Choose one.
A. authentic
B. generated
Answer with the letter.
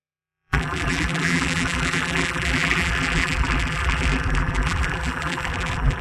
B